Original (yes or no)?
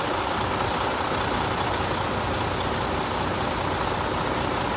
yes